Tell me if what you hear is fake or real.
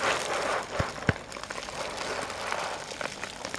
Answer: real